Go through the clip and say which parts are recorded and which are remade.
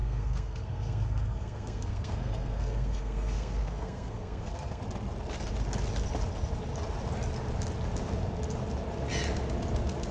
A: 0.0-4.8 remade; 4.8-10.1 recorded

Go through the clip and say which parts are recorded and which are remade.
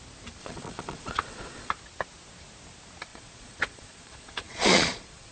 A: 0.0-0.4 recorded; 0.4-1.7 remade; 1.7-3.1 recorded; 3.1-5.3 remade